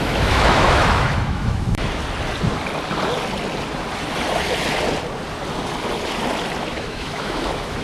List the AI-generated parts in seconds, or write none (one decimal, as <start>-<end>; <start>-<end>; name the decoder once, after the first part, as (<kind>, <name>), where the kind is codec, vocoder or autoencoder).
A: 0.0-2.0 (autoencoder, DAC-VAE); 6.7-7.8